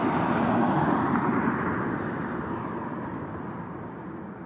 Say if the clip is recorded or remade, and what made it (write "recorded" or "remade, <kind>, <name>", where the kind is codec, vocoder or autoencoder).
recorded